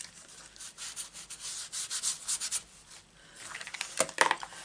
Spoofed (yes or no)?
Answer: no